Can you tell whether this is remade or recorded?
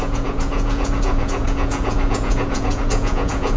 remade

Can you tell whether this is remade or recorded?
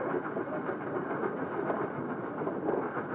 recorded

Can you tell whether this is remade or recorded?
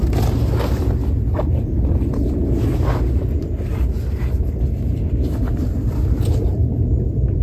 recorded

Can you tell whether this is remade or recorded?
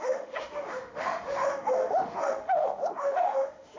remade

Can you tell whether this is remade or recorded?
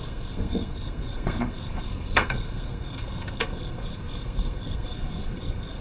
remade